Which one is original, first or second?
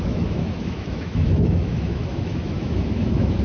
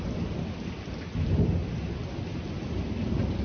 second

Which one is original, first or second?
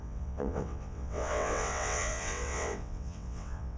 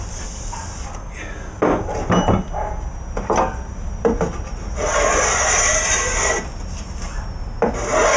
second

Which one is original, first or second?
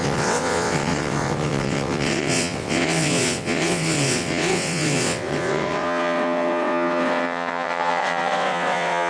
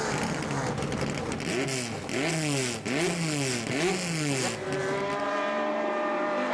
second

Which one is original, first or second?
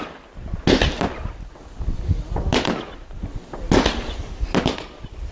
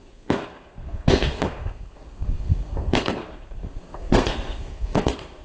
first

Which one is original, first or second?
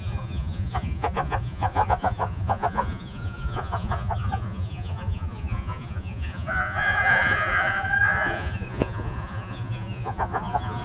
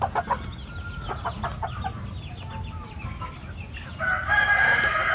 second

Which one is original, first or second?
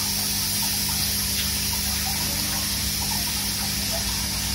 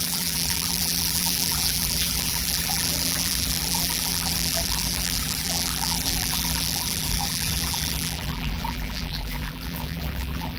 first